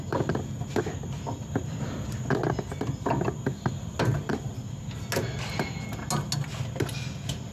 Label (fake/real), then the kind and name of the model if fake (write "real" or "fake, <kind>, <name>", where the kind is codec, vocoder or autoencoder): real